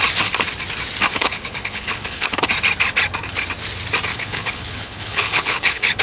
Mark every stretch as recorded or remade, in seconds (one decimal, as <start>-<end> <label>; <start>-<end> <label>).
0.0-1.1 recorded; 1.1-2.5 remade; 2.5-4.1 recorded; 4.1-6.0 remade